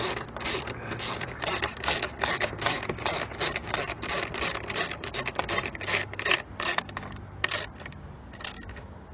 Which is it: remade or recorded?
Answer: recorded